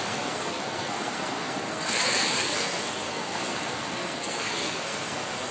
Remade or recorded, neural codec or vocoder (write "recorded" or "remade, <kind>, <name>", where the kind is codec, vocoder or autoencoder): remade, codec, SNAC